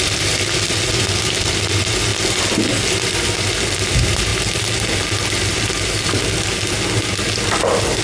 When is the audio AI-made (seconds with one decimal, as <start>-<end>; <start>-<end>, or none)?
none